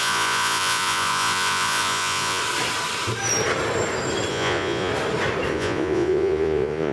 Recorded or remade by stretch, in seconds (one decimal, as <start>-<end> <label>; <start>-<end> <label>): 0.0-2.4 remade; 2.4-4.3 recorded; 4.3-4.9 remade; 4.9-5.5 recorded; 5.5-6.9 remade